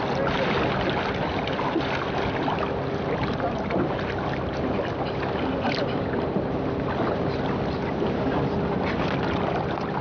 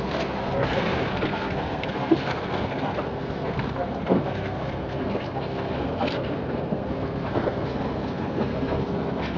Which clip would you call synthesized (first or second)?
second